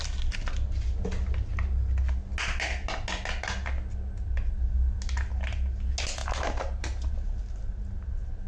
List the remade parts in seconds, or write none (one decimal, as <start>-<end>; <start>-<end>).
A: none